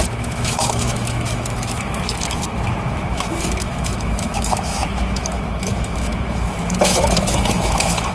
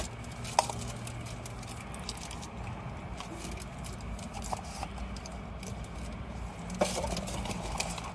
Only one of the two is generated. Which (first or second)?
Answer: first